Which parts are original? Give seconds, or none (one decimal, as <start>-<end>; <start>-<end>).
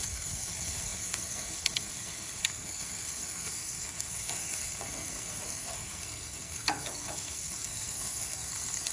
none